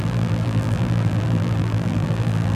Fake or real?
fake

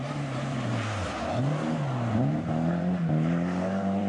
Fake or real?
fake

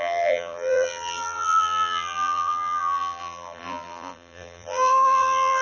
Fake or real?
fake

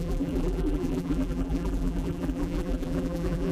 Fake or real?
fake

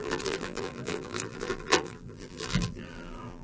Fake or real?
fake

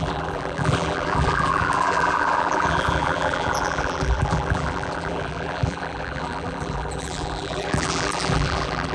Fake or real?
fake